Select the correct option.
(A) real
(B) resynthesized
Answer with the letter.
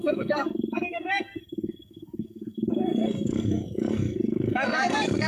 B